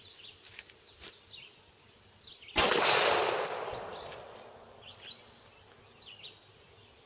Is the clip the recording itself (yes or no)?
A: yes